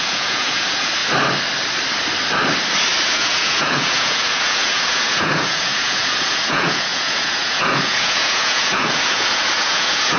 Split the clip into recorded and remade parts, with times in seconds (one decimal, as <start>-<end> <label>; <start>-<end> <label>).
0.0-1.0 remade; 1.0-3.1 recorded; 3.1-10.2 remade